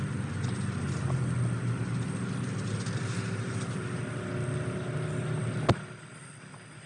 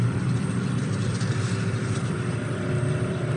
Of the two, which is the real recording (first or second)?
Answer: first